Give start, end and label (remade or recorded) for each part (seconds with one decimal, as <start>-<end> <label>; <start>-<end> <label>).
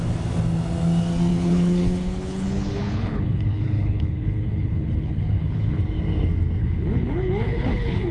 0.0-1.3 recorded; 1.3-5.8 remade; 5.8-6.6 recorded; 6.6-8.1 remade